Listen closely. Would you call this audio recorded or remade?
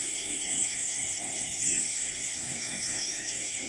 remade